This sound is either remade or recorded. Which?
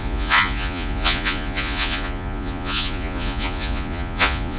remade